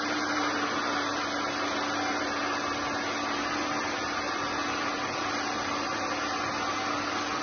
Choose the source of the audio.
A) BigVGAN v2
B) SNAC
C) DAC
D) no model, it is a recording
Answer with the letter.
D